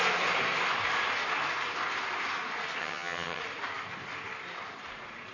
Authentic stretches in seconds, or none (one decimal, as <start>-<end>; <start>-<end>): 0.0-2.8; 3.4-5.3